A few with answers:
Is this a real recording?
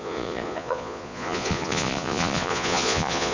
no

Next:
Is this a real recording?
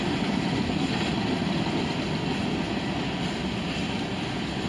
yes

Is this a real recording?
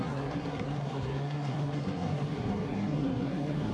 no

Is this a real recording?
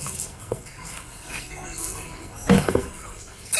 no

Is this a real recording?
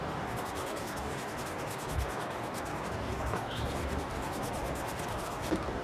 no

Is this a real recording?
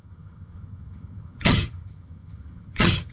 no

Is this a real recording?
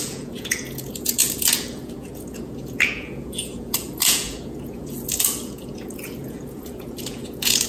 no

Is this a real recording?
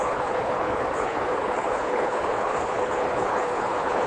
no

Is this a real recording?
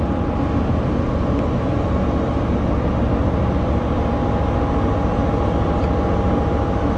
yes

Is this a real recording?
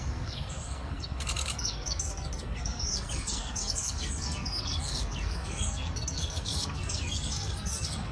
no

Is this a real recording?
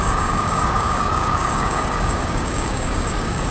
no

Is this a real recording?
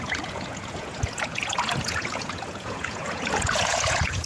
no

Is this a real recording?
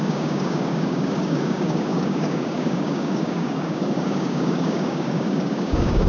no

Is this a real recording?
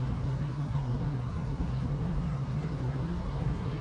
no